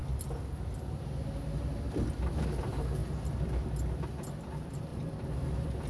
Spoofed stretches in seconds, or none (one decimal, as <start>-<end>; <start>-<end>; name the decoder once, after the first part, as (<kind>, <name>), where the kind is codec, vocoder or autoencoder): 2.6-3.0 (vocoder, BigVGAN v2); 4.4-4.9